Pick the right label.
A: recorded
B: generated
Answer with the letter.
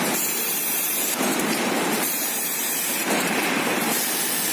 B